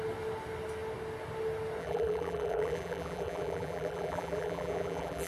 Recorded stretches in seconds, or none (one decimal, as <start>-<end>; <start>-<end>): 0.0-1.8